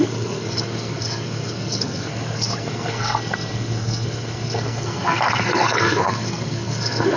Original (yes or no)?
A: no